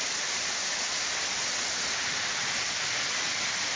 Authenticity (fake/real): real